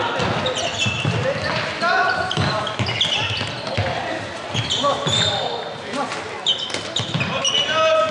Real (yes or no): yes